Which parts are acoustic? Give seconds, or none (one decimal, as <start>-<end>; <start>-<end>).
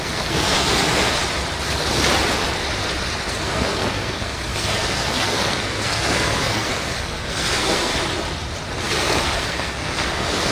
1.2-3.3; 7.9-8.8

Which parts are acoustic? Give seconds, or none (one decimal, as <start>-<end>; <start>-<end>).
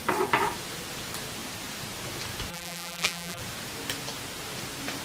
0.0-2.5; 3.4-5.0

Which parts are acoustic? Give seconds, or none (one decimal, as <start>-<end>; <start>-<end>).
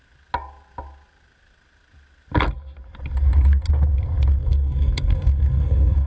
0.0-4.4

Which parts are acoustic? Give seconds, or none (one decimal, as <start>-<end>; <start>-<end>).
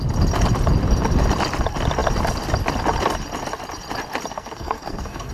0.0-4.3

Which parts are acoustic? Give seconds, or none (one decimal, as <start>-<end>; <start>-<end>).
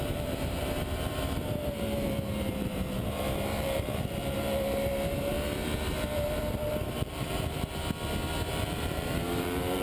7.8-8.5